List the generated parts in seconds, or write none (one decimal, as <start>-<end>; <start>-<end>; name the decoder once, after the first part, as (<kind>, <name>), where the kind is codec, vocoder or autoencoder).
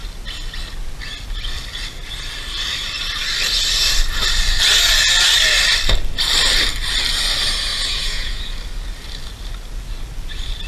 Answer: 7.7-8.4 (vocoder, Vocos)